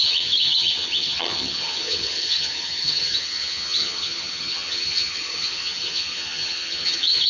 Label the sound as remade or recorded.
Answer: remade